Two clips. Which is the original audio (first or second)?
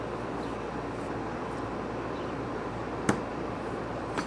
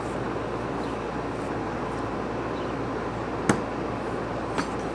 second